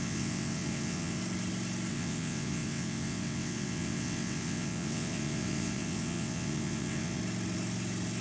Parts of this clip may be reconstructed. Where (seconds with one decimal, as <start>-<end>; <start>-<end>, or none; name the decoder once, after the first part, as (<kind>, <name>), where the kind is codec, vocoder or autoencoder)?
0.0-1.2 (vocoder, WaveNeXt); 1.9-7.2